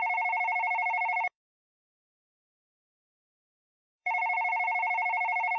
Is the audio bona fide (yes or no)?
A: no